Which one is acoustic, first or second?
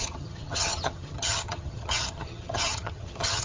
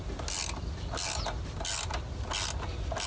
second